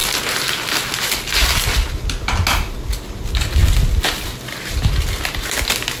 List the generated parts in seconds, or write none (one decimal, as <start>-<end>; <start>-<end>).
none